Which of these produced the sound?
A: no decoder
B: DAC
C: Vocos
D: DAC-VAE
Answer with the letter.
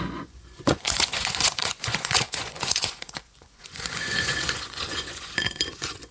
C